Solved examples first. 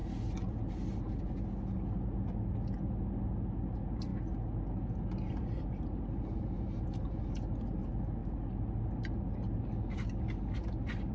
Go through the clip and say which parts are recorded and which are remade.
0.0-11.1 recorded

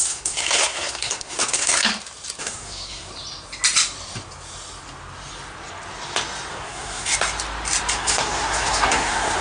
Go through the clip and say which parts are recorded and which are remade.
0.0-1.9 remade; 1.9-2.4 recorded; 2.4-3.1 remade; 3.1-6.5 recorded; 6.5-7.1 remade; 7.1-7.9 recorded; 7.9-9.4 remade

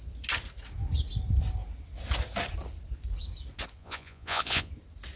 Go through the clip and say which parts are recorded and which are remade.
0.0-3.8 recorded; 3.8-4.7 remade; 4.7-5.2 recorded

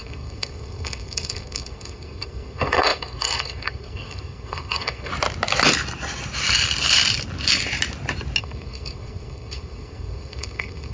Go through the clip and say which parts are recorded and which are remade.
0.0-5.1 remade; 5.1-8.4 recorded; 8.4-10.9 remade

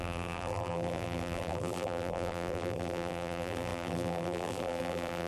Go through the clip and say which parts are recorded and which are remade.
0.0-5.3 remade